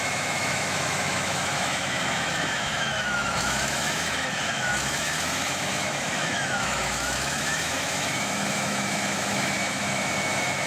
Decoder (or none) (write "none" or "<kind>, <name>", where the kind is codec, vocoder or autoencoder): autoencoder, DAC-VAE